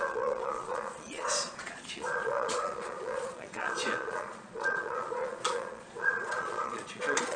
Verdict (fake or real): fake